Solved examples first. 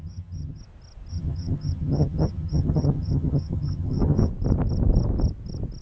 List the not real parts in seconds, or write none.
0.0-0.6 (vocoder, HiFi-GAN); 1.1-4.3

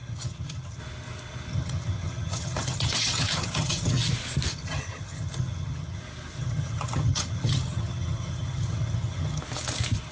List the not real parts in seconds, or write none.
0.0-0.8 (vocoder, HiFi-GAN); 1.5-4.1; 4.5-6.0; 6.4-9.4

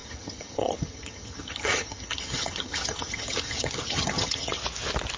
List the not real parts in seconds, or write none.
0.0-4.6 (vocoder, HiFi-GAN)